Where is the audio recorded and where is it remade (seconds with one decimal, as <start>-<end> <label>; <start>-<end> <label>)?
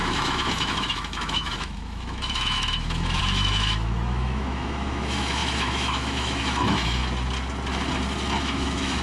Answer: 0.0-7.0 remade; 7.0-8.4 recorded; 8.4-9.0 remade